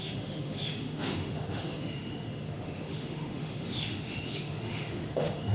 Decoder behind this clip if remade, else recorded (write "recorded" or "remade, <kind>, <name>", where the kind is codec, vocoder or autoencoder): remade, autoencoder, DAC-VAE